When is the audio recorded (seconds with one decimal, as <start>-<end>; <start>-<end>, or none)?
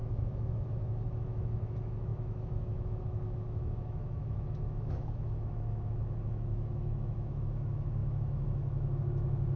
none